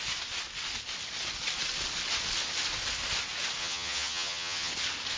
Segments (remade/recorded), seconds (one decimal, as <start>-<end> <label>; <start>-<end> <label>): 0.0-3.6 recorded; 3.6-4.7 remade; 4.7-5.2 recorded